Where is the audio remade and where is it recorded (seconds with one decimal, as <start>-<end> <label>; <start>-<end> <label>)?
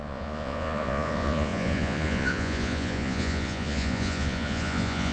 0.0-5.1 remade